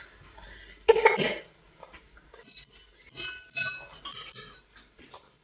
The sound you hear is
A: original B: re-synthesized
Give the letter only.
A